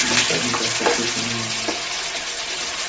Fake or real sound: real